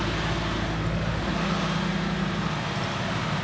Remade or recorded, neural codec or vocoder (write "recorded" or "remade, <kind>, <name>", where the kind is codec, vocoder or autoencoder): recorded